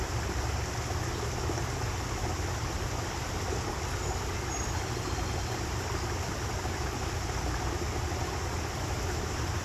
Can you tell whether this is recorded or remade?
recorded